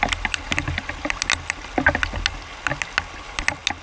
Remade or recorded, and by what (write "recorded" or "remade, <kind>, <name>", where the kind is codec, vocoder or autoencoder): recorded